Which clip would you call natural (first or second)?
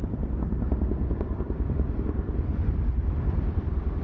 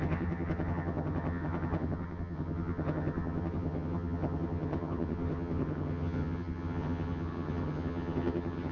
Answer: first